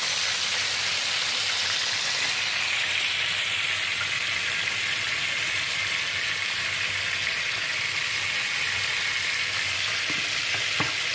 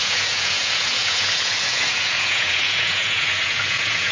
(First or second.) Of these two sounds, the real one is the first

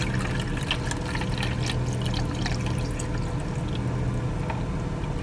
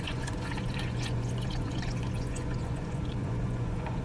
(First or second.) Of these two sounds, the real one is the first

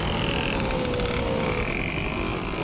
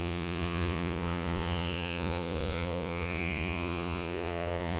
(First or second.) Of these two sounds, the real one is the first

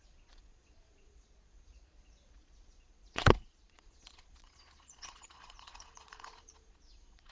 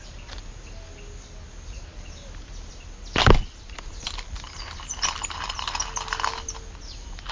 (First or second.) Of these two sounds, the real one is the second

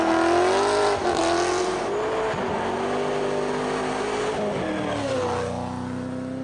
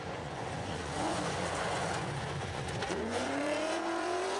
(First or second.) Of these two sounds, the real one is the first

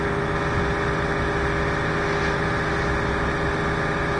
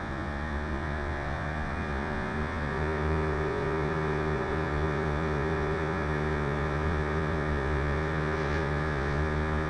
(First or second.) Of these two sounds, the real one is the first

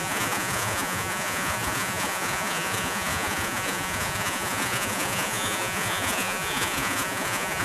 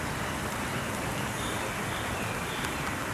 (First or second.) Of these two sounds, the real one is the second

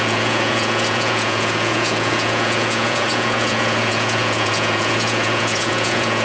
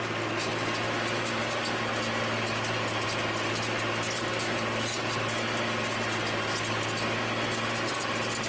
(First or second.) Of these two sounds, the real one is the second